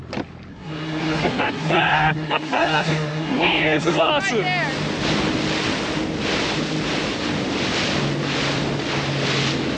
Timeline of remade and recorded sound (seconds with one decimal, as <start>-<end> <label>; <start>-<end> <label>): 0.0-0.5 recorded; 0.5-4.1 remade; 4.1-9.8 recorded